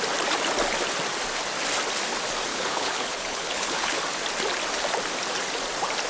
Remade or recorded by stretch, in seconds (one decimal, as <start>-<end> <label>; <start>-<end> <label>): 0.0-2.5 recorded; 2.5-4.0 remade; 4.0-6.1 recorded